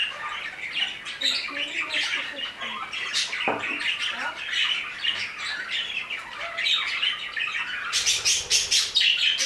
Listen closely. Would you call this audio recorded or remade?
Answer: recorded